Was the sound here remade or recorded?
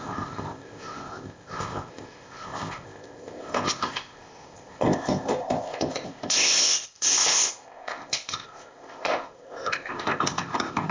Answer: remade